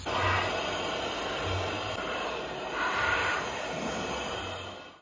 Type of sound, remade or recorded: recorded